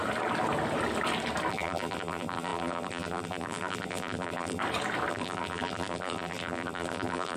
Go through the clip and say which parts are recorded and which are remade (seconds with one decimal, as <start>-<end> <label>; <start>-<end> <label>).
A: 0.0-1.5 recorded; 1.5-4.6 remade; 4.6-5.1 recorded; 5.1-7.4 remade